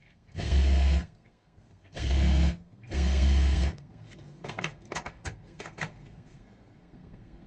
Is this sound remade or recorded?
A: remade